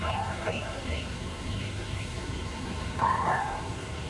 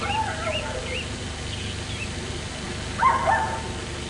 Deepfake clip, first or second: first